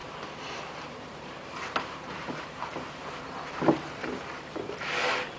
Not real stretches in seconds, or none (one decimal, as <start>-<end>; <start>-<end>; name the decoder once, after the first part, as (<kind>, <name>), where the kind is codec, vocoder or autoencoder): 0.0-3.2 (vocoder, BigVGAN v2)